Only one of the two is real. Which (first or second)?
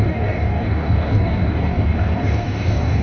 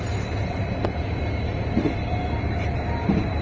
second